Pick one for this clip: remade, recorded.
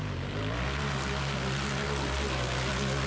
recorded